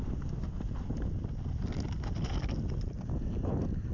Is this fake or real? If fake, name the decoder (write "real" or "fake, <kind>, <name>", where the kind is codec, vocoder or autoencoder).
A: real